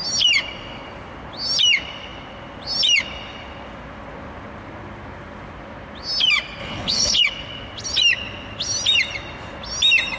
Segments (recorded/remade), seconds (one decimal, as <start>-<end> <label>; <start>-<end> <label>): 0.0-6.6 recorded; 6.6-7.2 remade; 7.2-10.2 recorded